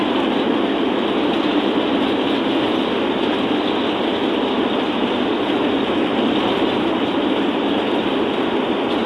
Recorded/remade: recorded